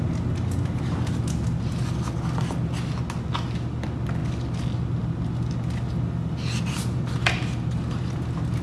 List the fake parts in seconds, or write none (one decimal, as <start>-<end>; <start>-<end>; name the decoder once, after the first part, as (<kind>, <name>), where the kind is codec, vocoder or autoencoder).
none